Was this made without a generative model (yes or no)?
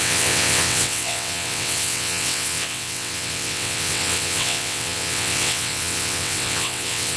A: no